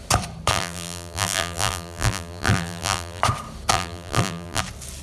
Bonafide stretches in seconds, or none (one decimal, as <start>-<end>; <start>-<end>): 0.0-0.5; 3.2-3.7; 4.6-5.0